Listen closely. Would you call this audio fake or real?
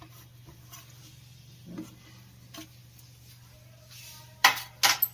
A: real